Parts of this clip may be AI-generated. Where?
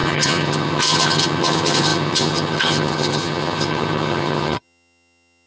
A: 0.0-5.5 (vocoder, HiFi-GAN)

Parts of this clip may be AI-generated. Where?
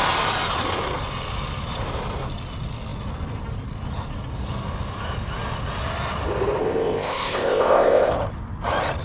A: 6.6-8.1 (codec, ZipCodec)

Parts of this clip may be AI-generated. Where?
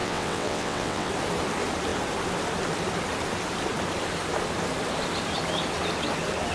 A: 0.0-1.1 (vocoder, WaveNeXt)